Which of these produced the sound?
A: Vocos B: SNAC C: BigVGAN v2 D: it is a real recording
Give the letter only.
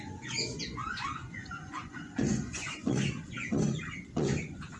A